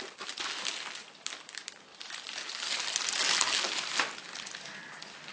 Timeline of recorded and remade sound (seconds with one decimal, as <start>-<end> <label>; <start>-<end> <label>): 0.0-5.3 recorded